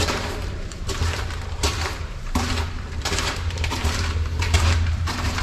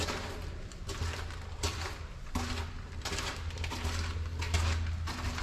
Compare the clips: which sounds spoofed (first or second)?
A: first